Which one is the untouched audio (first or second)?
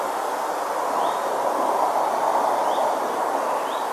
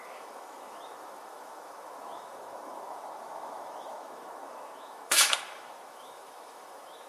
first